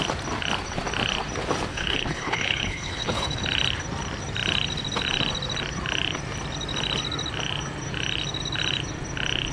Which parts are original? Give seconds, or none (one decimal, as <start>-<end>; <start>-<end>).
0.0-1.7; 3.4-9.5